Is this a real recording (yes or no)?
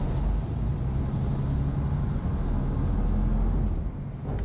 yes